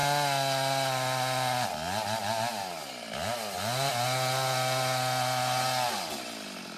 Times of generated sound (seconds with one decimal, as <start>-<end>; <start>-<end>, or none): none